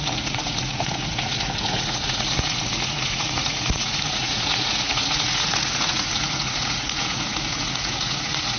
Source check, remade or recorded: remade